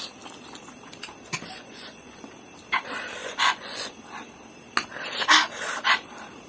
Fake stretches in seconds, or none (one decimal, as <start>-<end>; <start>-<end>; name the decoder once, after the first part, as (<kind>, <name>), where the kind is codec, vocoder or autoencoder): 1.6-2.3 (vocoder, Vocos); 3.2-3.9